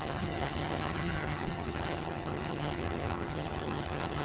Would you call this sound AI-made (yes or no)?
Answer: yes